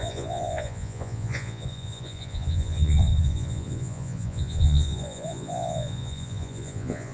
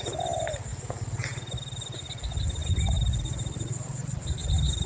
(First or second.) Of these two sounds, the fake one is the first